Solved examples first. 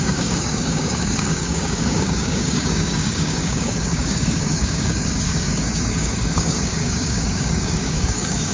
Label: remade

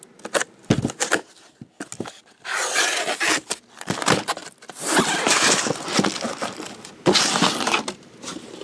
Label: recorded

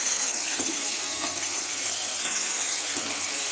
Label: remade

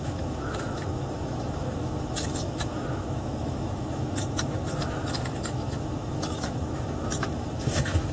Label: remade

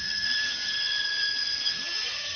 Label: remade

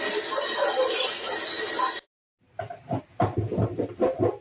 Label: recorded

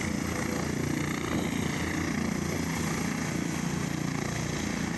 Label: recorded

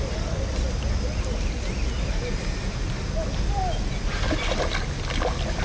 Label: recorded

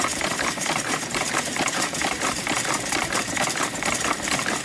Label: remade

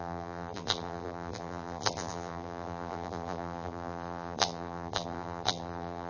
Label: remade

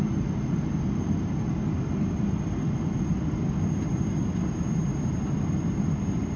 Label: recorded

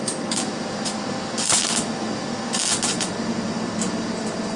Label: recorded